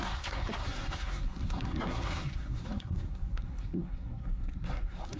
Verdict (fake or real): fake